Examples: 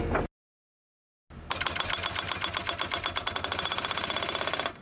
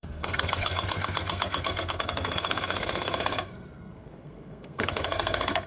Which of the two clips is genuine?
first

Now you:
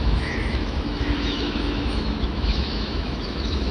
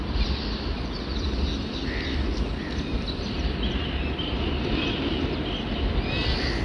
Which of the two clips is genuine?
second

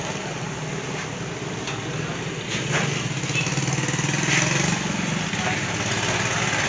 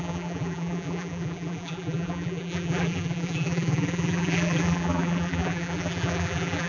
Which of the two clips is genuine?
first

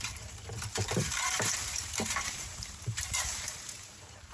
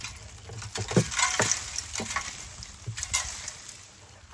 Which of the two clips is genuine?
second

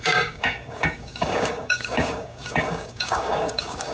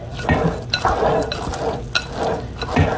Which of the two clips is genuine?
second